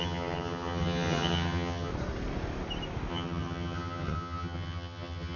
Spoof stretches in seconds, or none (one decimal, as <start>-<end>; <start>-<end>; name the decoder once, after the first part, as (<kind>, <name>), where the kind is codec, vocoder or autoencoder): 0.0-1.9 (vocoder, HiFi-GAN); 3.1-5.4